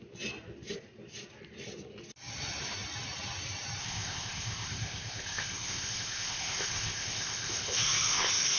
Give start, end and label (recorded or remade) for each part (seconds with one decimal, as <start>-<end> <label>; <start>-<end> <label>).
0.0-3.8 recorded; 3.8-8.6 remade